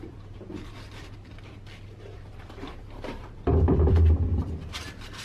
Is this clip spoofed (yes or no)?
yes